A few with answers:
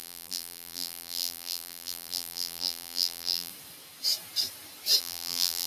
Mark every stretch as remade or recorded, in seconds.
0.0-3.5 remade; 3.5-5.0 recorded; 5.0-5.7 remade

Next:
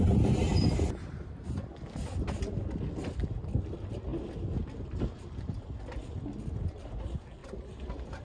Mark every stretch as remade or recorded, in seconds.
0.0-0.4 recorded; 0.4-1.5 remade; 1.5-7.4 recorded; 7.4-8.2 remade

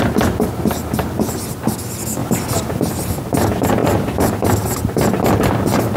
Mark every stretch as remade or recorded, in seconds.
0.0-3.8 recorded; 3.8-4.3 remade; 4.3-6.0 recorded

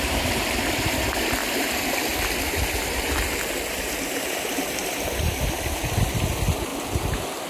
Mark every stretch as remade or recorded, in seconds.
0.0-1.4 remade; 1.4-5.6 recorded; 5.6-6.7 remade; 6.7-7.5 recorded

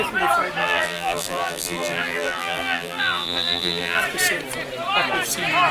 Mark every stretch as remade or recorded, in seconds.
0.0-0.6 recorded; 0.6-4.0 remade; 4.0-5.7 recorded

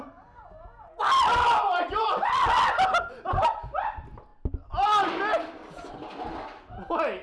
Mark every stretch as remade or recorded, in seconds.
0.0-1.7 recorded; 1.7-2.4 remade; 2.4-7.2 recorded

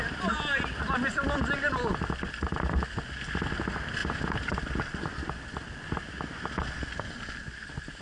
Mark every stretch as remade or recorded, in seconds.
0.0-4.0 recorded; 4.0-4.6 remade; 4.6-8.0 recorded